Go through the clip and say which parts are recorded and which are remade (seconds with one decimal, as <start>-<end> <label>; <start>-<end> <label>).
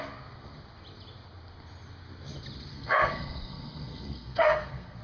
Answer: 0.0-2.7 recorded; 2.7-5.0 remade